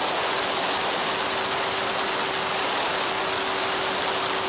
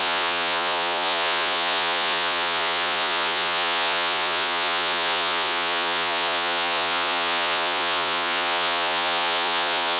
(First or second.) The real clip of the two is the first